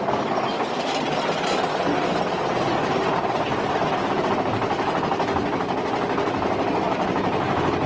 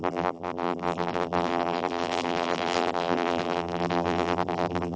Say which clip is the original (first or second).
first